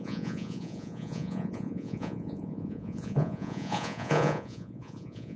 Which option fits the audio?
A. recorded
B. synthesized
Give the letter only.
B